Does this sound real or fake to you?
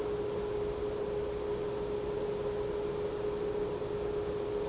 real